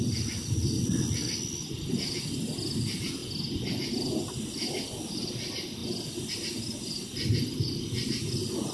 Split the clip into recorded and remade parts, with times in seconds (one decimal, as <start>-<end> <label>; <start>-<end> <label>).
0.0-8.7 recorded